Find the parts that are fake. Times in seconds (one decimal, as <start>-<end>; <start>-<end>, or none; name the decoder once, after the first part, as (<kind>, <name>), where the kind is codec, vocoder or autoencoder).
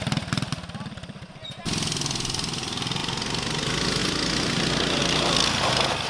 none